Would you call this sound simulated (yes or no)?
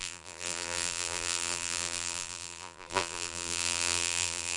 yes